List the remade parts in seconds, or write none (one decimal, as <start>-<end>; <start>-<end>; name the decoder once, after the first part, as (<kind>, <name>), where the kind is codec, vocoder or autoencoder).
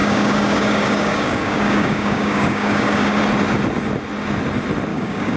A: 0.0-3.2 (codec, DAC); 4.9-5.4